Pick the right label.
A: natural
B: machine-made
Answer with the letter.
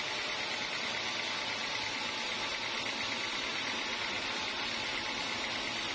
A